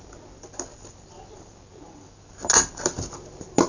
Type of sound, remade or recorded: recorded